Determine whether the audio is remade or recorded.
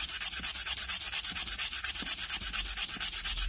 recorded